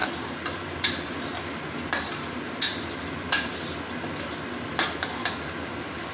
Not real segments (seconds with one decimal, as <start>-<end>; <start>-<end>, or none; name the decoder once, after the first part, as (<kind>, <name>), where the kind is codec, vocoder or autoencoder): 0.0-1.1 (vocoder, BigVGAN v2)